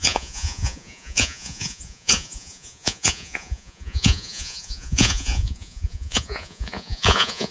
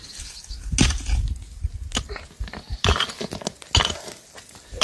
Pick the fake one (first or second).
first